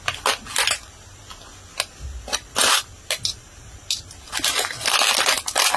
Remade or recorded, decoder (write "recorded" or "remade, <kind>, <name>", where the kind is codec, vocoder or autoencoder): recorded